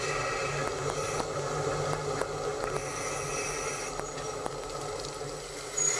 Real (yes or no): yes